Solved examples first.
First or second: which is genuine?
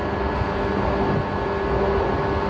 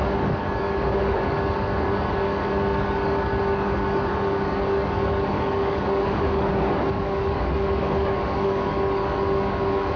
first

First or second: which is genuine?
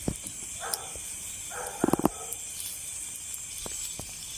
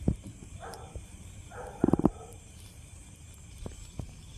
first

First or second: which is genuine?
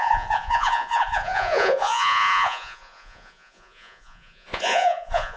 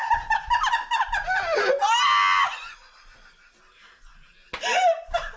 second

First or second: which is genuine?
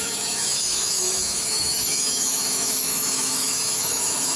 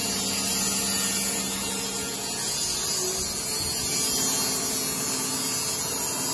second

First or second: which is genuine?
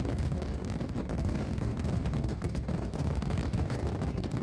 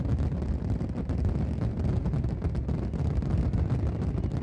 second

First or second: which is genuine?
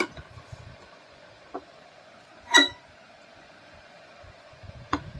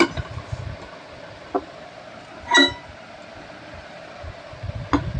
second